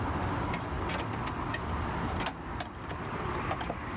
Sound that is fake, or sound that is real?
real